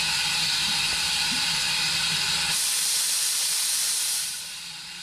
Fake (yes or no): yes